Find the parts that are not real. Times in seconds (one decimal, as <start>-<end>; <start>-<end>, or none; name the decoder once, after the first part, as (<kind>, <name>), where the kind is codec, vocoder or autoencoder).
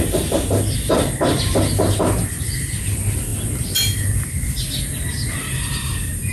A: none